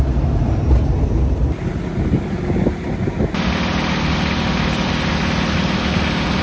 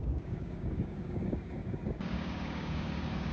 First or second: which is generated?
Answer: second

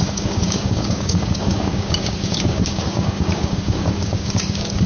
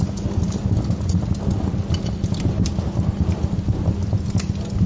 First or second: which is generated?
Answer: first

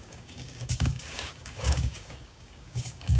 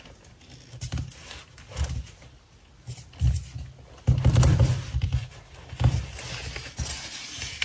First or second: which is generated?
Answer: first